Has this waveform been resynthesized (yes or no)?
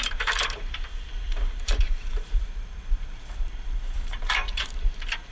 yes